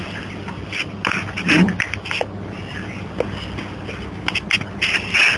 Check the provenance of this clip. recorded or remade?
recorded